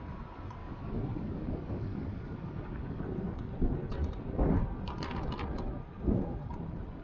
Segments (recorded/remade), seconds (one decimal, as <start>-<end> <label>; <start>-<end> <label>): 0.0-0.6 recorded; 0.6-3.0 remade; 3.0-7.0 recorded